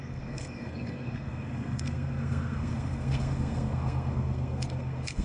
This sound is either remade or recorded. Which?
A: remade